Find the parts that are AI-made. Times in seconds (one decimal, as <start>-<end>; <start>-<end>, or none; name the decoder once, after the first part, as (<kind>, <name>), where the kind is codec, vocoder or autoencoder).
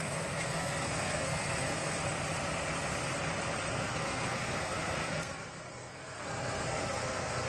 0.0-2.0 (codec, SNAC); 3.7-7.5